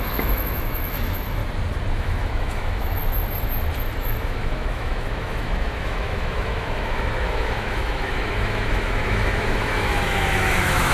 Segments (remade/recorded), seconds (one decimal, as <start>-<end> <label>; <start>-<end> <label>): 0.0-1.4 remade; 1.4-2.0 recorded; 2.0-3.0 remade; 3.0-4.0 recorded; 4.0-10.9 remade